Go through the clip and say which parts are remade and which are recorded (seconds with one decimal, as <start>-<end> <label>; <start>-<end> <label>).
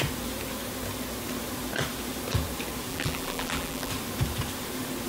0.0-2.9 recorded; 2.9-3.9 remade; 3.9-5.1 recorded